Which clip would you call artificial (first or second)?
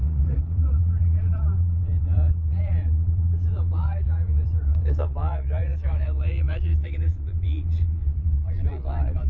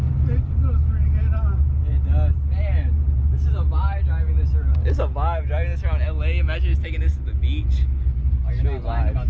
first